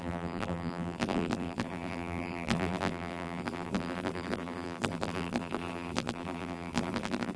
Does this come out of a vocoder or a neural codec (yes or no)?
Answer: yes